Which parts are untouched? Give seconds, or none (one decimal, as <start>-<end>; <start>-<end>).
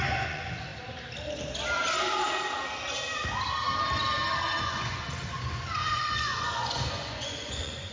0.7-4.6